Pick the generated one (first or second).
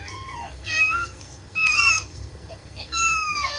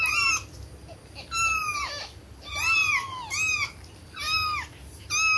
first